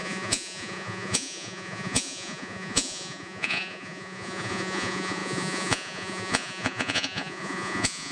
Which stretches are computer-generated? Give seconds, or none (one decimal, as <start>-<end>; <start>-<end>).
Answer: 0.0-8.1

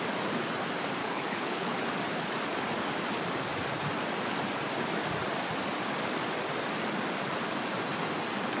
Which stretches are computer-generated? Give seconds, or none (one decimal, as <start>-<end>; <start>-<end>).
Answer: 1.0-1.8